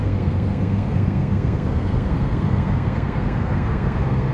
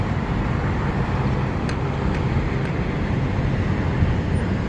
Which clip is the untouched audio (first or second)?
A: second